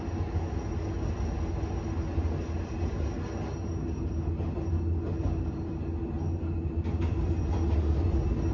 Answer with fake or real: real